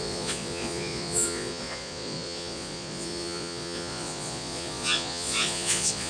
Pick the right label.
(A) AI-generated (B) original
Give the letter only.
A